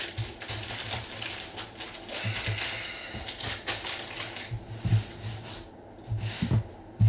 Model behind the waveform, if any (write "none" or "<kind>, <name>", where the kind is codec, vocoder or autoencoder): none